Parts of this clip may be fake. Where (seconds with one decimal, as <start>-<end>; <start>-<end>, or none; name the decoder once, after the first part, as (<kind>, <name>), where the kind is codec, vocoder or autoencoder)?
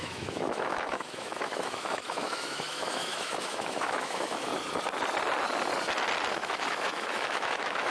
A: 0.0-4.5 (autoencoder, DAC-VAE); 6.3-7.9